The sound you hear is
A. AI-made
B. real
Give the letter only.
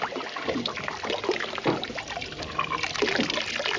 B